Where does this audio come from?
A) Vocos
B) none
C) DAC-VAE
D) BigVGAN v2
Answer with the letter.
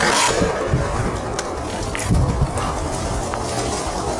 B